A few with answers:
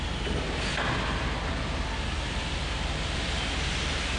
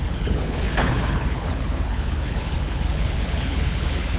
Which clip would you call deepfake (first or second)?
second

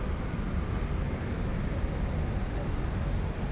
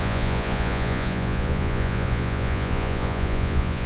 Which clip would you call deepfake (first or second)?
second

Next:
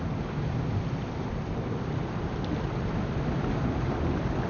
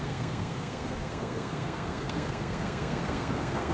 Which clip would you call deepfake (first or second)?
second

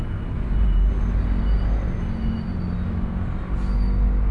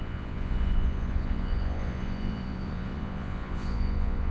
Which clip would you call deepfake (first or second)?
second